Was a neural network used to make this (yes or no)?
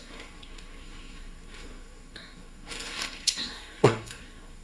yes